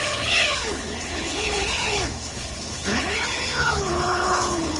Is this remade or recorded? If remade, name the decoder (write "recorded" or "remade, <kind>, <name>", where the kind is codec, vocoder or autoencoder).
remade, codec, HILCodec